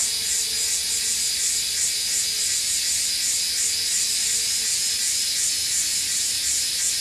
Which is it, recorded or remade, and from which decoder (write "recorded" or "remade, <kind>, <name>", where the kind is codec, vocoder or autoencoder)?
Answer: recorded